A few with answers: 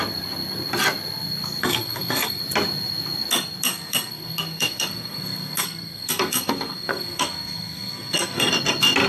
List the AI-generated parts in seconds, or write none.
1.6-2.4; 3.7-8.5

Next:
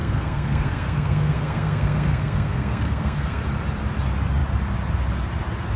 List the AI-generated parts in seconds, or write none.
0.0-3.4

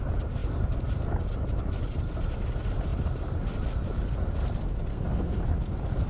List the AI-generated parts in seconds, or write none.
4.9-5.4